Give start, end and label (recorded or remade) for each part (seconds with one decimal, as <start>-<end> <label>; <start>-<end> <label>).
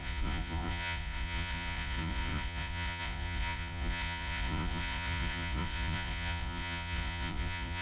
0.0-7.8 remade